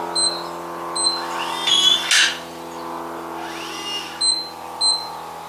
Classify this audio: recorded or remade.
recorded